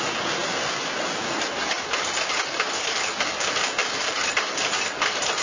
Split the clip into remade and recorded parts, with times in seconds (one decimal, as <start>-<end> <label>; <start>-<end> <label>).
0.0-0.4 recorded; 0.4-3.3 remade; 3.3-3.8 recorded; 3.8-5.4 remade